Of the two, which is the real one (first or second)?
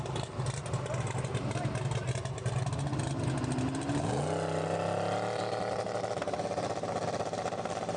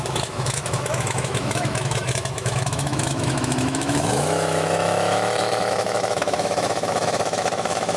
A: first